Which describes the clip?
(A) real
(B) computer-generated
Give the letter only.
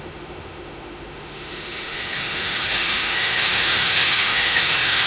B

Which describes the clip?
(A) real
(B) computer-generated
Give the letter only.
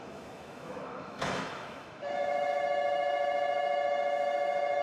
B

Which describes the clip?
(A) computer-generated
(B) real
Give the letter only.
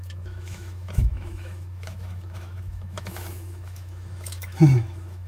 A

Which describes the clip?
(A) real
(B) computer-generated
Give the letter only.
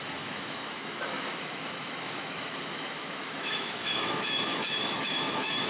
B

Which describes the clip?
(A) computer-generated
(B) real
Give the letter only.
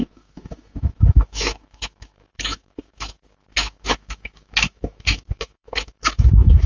A